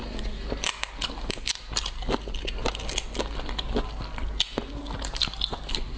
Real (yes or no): yes